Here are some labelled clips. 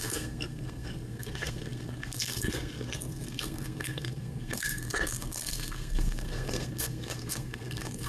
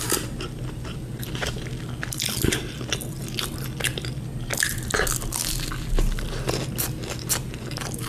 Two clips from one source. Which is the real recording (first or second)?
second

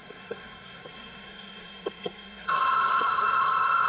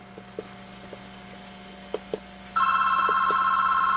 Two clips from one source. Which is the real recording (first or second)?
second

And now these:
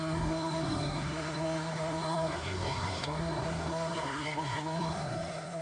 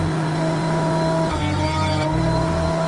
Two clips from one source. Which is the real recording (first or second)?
second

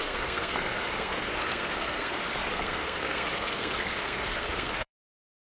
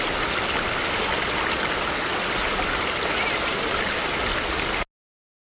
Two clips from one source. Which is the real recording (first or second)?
second